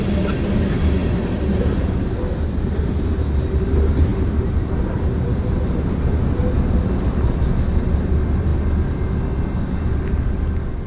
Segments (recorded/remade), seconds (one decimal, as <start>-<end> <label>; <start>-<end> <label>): 0.0-1.0 recorded; 1.0-2.2 remade; 2.2-4.1 recorded; 4.1-4.6 remade; 4.6-10.9 recorded